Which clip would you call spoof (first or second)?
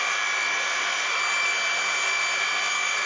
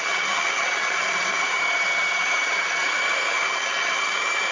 second